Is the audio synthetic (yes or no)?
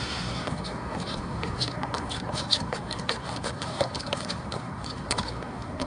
yes